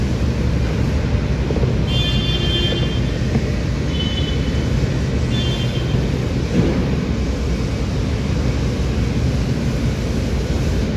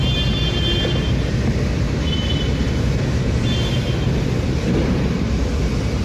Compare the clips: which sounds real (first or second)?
first